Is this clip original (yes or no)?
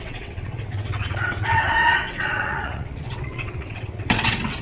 no